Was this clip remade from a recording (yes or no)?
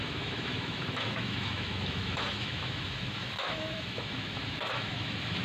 yes